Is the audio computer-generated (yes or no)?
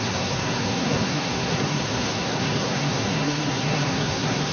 yes